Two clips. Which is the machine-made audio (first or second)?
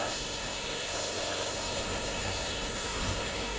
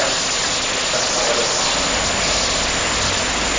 first